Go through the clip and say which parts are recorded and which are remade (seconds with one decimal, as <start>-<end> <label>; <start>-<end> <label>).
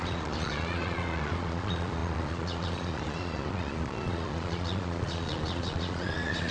0.0-6.5 remade